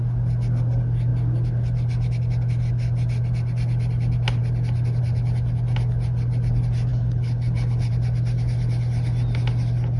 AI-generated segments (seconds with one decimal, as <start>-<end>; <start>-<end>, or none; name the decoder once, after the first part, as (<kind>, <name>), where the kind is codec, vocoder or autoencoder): 6.9-7.9 (codec, HILCodec)